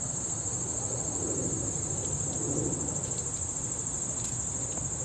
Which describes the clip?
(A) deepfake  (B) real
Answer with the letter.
B